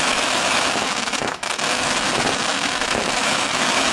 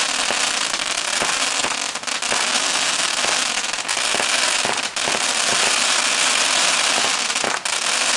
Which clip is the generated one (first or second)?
first